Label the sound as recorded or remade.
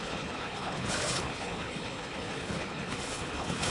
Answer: remade